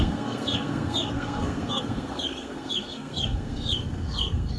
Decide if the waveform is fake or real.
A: fake